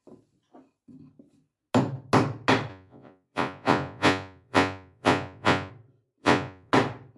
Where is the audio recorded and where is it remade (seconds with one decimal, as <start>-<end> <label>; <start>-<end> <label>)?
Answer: 0.0-2.7 recorded; 2.7-5.7 remade; 5.7-6.2 recorded; 6.2-6.7 remade; 6.7-7.2 recorded